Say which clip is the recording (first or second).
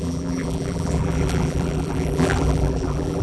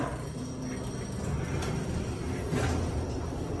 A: second